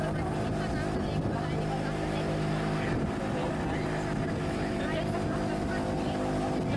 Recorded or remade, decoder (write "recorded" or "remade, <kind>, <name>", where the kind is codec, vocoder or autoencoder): recorded